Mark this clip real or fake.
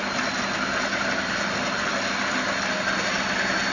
real